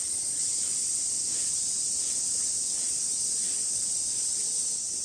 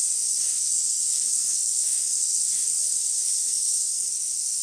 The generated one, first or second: second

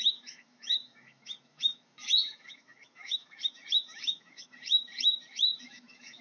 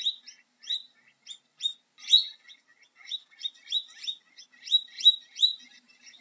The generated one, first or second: first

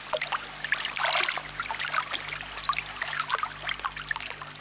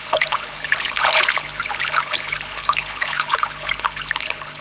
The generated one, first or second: second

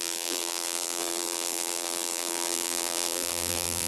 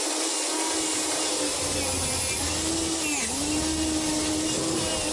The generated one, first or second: first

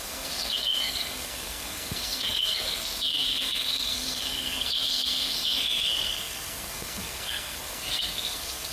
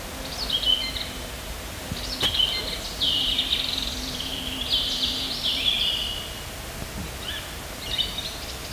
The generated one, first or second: first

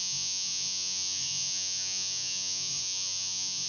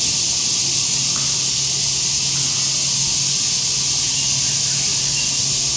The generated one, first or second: first